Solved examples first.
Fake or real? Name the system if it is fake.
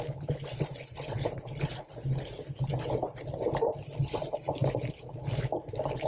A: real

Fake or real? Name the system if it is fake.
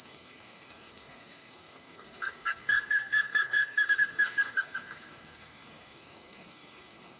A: fake, codec, SNAC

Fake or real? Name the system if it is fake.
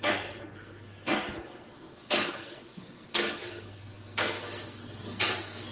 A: fake, codec, SNAC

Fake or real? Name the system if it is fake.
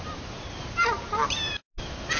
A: real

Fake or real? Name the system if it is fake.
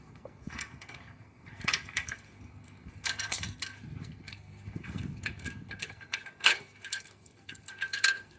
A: fake, codec, SNAC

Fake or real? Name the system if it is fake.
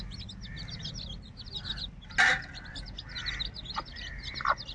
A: real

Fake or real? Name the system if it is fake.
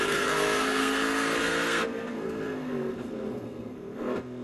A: fake, codec, SNAC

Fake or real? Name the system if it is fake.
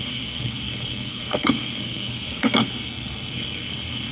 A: fake, codec, SNAC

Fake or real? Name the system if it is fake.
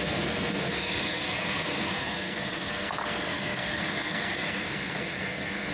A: fake, codec, SNAC